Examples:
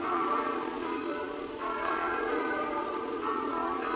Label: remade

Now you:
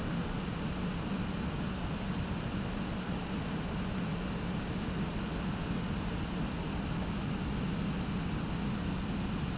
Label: recorded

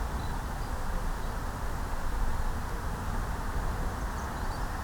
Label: remade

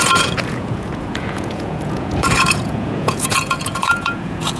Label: remade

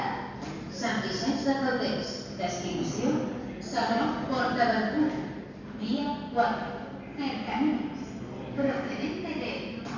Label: recorded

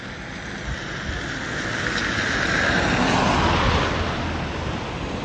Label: recorded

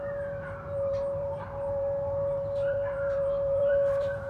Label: remade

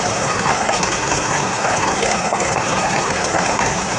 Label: remade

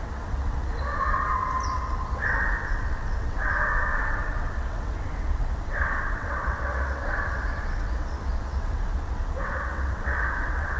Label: remade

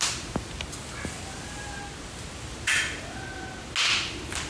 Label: recorded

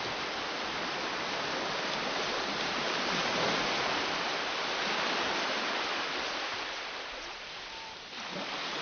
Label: remade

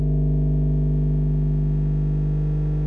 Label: remade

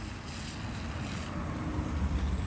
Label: recorded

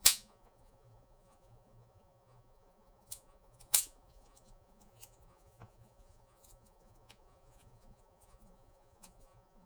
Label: remade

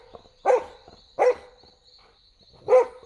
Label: recorded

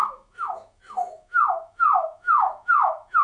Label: remade